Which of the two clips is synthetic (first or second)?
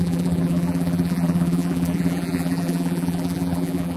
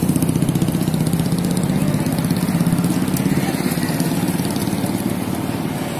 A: first